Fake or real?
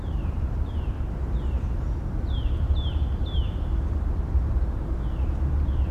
real